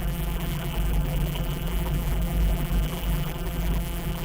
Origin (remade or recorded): remade